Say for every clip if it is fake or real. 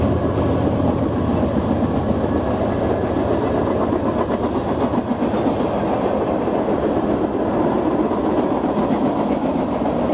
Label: real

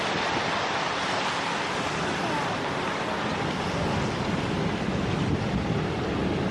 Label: real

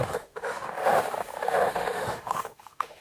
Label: fake